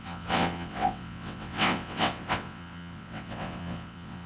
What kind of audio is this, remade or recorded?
remade